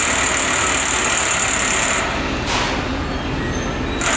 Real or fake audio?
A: real